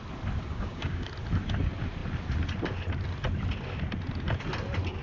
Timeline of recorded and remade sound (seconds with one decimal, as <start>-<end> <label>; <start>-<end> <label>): 0.0-0.5 recorded; 0.5-1.1 remade; 1.1-5.0 recorded